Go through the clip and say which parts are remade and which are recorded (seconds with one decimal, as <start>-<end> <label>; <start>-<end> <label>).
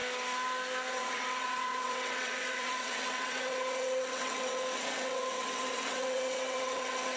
0.0-0.9 recorded; 0.9-7.2 remade